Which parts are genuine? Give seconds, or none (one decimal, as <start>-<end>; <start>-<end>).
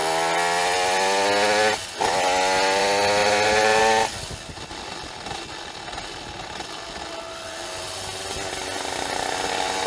0.0-3.2; 3.8-9.9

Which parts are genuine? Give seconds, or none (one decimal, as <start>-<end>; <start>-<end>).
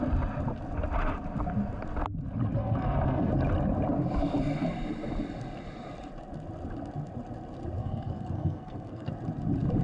0.0-2.6; 3.3-7.8; 9.1-9.8